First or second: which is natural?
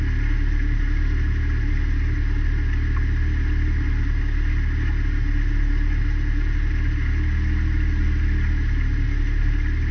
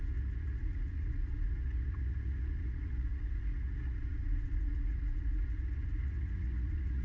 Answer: first